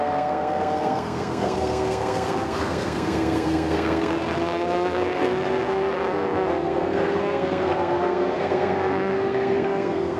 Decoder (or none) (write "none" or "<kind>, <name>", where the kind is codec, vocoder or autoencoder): codec, SNAC